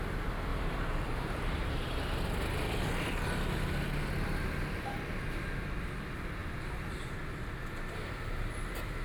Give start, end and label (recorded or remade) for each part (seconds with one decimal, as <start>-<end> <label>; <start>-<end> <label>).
0.0-0.5 recorded; 0.5-2.2 remade; 2.2-9.0 recorded